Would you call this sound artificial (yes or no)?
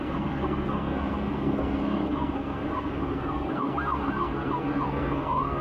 yes